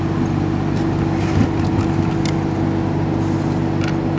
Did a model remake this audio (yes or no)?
no